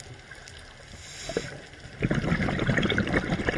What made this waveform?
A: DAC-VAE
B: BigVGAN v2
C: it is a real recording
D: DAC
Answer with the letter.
C